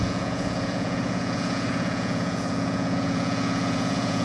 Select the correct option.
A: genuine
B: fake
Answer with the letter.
B